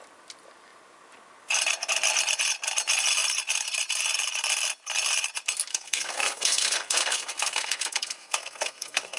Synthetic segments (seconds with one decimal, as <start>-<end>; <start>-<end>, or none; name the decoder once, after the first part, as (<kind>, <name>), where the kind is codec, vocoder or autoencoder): 5.7-9.2 (codec, SNAC)